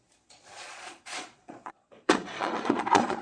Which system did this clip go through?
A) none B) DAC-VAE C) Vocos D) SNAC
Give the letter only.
C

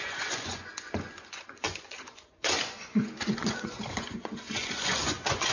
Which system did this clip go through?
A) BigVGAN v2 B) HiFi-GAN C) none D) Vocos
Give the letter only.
D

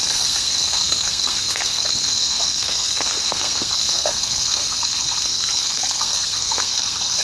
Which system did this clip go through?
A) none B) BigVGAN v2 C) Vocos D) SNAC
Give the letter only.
D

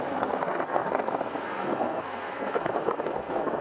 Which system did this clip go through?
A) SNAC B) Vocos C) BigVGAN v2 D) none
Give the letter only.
A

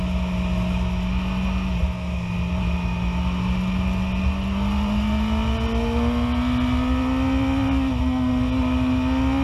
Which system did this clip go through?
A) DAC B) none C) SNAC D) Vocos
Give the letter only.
B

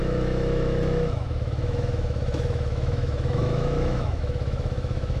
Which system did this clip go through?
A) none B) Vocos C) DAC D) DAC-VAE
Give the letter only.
D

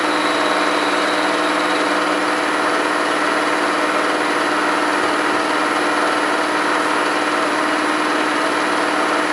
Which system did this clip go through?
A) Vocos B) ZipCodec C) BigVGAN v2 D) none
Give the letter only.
D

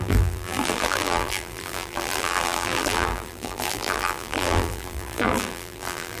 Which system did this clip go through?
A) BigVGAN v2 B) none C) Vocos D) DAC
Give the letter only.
A